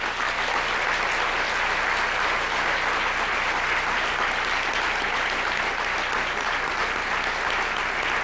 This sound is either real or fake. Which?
real